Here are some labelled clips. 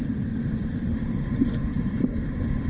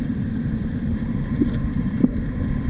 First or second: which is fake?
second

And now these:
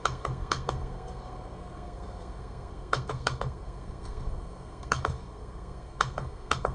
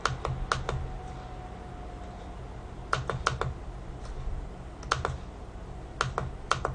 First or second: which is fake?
first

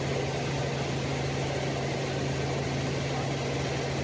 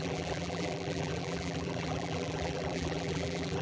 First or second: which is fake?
second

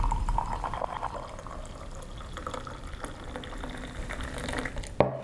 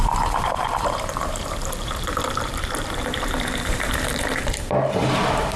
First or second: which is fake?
second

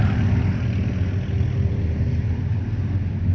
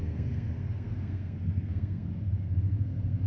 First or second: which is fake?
second